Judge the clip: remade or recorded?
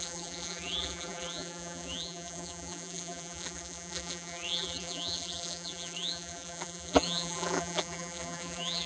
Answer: remade